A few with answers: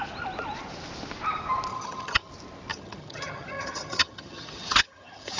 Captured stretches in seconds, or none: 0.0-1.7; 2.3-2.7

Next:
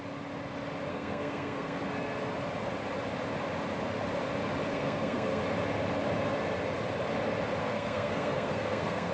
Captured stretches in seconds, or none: 0.0-0.9; 1.8-4.7; 5.4-7.6

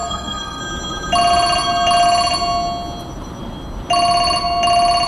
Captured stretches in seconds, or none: 0.6-5.1